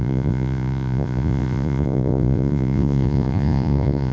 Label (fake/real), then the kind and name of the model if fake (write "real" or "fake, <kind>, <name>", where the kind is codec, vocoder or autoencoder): fake, vocoder, Vocos